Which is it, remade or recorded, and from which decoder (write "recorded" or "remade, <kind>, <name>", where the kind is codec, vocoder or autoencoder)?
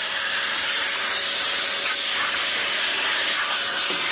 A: recorded